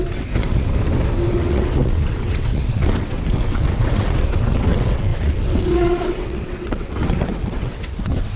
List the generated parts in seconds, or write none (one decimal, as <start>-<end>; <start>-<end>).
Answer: 0.0-0.7; 1.3-8.4